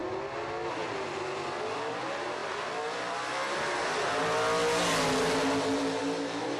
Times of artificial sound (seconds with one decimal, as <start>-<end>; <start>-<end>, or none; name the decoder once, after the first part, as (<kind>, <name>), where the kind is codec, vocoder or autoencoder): none